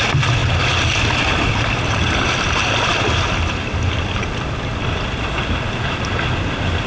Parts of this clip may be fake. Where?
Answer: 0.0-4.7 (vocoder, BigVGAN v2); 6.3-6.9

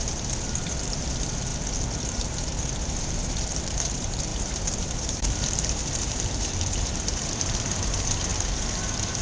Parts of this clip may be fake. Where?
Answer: 0.0-1.5 (vocoder, BigVGAN v2); 2.1-9.2

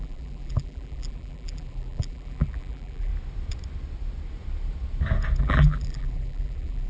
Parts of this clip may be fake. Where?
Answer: 0.0-3.1 (vocoder, BigVGAN v2); 5.4-6.9

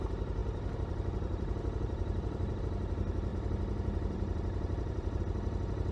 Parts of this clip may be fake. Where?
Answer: 0.4-2.6 (vocoder, BigVGAN v2); 3.3-5.2

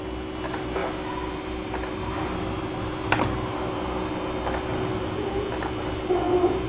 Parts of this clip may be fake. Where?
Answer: none

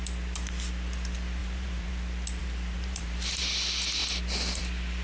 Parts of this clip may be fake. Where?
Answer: 1.4-1.9 (vocoder, BigVGAN v2); 2.4-3.4

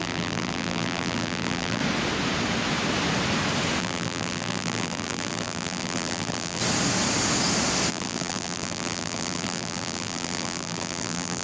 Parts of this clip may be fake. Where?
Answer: 0.0-1.8 (vocoder, BigVGAN v2); 3.8-6.6; 7.9-11.4

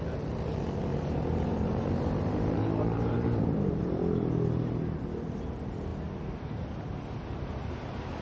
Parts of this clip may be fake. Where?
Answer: 0.9-4.3 (vocoder, BigVGAN v2)